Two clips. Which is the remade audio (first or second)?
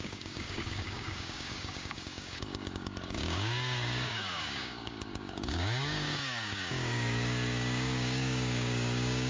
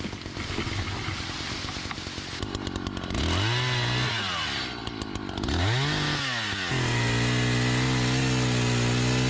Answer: first